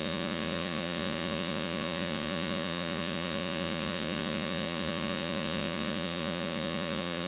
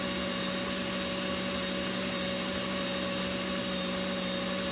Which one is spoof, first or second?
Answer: first